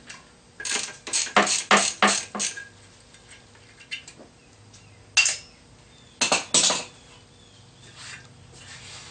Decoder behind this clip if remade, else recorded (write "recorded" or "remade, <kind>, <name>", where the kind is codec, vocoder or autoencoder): recorded